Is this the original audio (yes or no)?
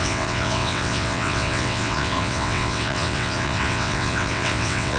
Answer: no